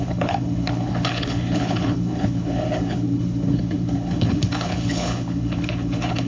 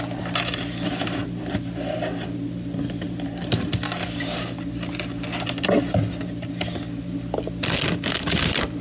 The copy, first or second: first